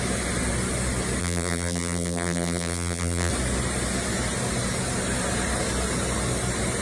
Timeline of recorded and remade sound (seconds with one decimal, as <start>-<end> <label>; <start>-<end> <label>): 0.0-1.2 recorded; 1.2-3.3 remade; 3.3-6.8 recorded